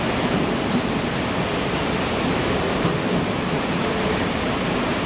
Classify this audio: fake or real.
real